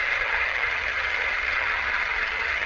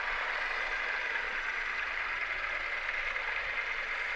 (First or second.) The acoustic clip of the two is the second